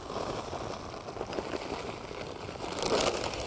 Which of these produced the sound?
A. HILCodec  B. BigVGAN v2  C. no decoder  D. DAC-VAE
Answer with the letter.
C